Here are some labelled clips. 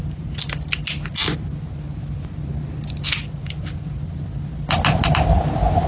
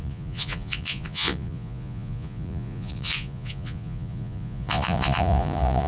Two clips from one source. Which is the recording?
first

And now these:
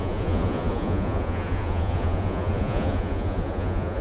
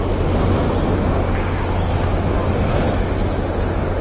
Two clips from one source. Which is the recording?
second